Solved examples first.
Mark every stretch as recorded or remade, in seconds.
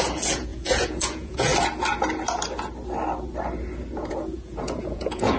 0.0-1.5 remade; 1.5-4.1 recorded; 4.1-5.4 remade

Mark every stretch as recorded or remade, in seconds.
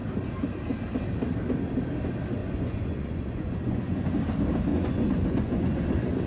0.0-2.4 recorded; 2.4-4.1 remade; 4.1-4.7 recorded; 4.7-6.3 remade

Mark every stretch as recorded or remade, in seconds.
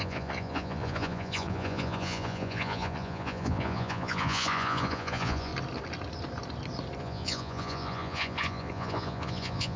0.0-5.5 remade; 5.5-7.0 recorded; 7.0-9.8 remade